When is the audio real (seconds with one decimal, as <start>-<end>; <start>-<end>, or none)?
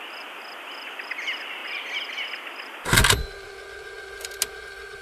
0.0-5.0